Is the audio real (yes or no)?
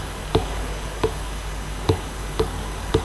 no